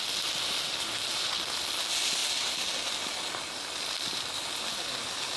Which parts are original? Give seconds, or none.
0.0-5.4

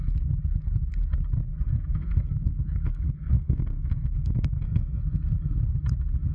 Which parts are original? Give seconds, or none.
0.0-1.5; 5.0-6.3